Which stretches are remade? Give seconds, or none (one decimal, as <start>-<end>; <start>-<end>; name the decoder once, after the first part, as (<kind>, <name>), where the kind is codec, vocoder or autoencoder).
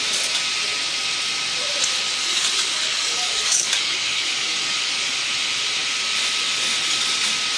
2.2-5.1 (codec, DAC)